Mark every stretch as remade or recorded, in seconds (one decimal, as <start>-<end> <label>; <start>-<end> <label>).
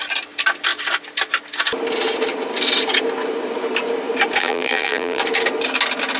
0.0-4.4 recorded; 4.4-5.2 remade; 5.2-6.2 recorded